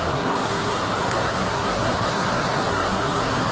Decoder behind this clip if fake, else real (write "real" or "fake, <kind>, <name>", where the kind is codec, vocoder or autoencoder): fake, codec, SNAC